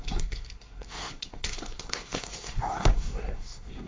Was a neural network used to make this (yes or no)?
yes